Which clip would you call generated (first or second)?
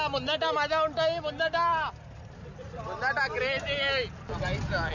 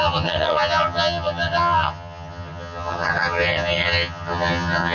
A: second